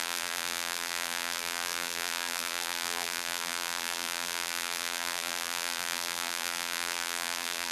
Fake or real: fake